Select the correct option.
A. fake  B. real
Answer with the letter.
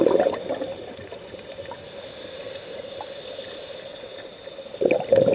B